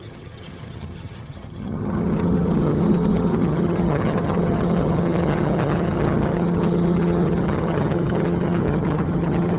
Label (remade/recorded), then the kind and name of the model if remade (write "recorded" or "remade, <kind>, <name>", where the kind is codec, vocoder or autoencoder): remade, vocoder, HiFi-GAN